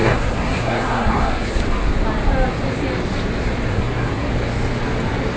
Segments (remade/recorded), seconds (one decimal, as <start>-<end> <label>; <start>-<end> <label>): 0.0-1.6 remade; 1.6-3.7 recorded; 3.7-4.3 remade; 4.3-5.4 recorded